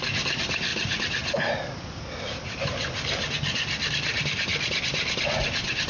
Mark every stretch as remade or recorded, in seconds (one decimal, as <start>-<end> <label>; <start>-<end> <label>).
0.0-5.9 recorded